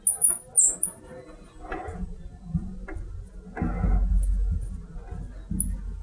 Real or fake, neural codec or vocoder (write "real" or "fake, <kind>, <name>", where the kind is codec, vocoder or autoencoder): real